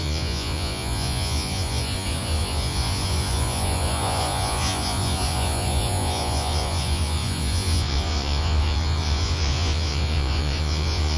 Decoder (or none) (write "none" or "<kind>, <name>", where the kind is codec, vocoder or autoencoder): vocoder, Vocos